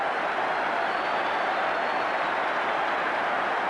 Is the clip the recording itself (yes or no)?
yes